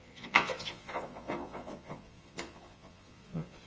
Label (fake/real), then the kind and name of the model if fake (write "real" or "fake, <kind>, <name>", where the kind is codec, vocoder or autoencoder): fake, vocoder, Vocos